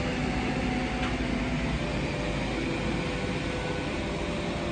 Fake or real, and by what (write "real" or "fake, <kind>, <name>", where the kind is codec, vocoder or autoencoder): real